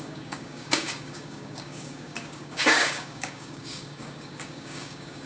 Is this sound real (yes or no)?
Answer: no